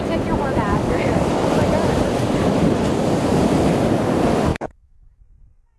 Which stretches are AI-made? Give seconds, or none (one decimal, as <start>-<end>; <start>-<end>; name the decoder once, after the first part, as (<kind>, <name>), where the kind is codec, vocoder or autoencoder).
0.7-1.5 (codec, DAC); 4.5-5.2